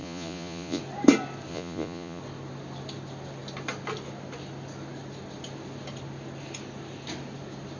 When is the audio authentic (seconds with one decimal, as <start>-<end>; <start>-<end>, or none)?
0.8-1.5; 2.2-7.8